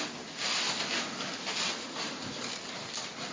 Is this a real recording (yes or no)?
yes